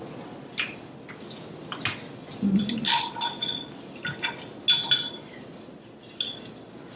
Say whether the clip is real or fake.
real